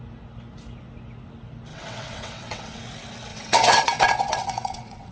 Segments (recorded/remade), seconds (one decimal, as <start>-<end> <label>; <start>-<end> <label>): 0.0-1.7 recorded; 1.7-2.8 remade; 2.8-3.3 recorded; 3.3-5.1 remade

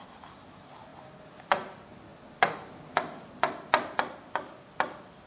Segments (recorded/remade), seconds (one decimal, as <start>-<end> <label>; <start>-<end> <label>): 0.0-5.3 recorded

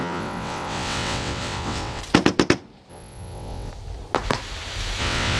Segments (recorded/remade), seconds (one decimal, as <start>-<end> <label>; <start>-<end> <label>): 0.0-2.0 remade; 2.0-2.9 recorded; 2.9-3.7 remade; 3.7-5.0 recorded; 5.0-5.4 remade

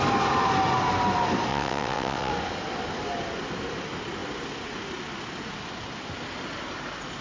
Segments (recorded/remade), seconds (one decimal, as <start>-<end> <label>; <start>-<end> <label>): 0.0-1.5 recorded; 1.5-2.3 remade; 2.3-7.2 recorded

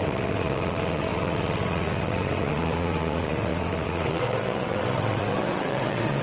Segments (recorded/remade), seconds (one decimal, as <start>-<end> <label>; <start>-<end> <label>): 0.0-6.2 remade

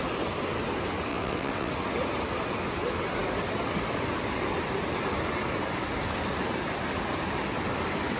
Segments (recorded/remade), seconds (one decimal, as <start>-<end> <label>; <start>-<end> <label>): 0.0-1.1 recorded; 1.1-1.7 remade; 1.7-8.2 recorded

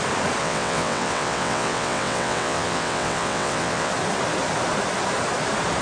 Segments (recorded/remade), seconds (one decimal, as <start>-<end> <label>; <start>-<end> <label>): 0.0-0.4 recorded; 0.4-3.9 remade; 3.9-5.8 recorded

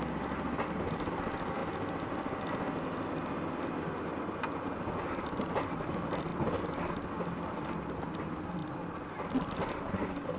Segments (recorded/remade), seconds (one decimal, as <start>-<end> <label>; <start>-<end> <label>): 0.0-10.4 recorded